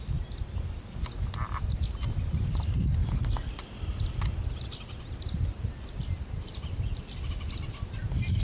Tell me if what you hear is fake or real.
real